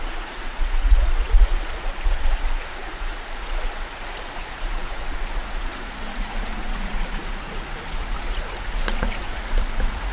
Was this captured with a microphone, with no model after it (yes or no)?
no